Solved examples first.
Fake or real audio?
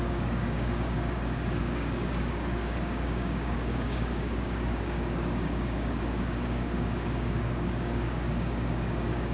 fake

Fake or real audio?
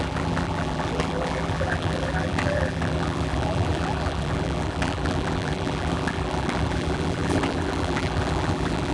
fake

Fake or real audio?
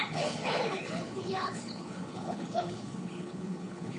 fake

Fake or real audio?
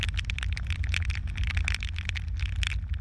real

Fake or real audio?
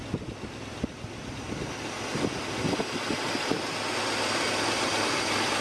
real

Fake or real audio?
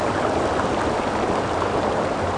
real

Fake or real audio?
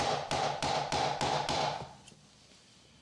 real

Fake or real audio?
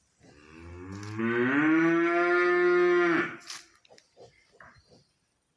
real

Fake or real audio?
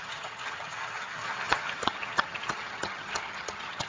fake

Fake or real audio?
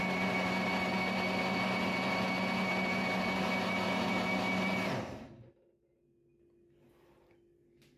real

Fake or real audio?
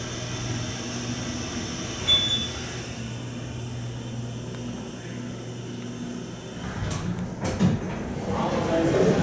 real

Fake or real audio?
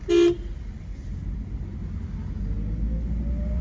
real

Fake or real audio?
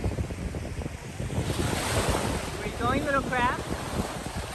real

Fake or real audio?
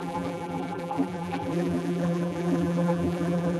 fake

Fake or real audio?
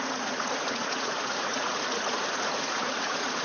fake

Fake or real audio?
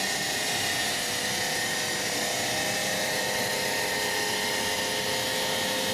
real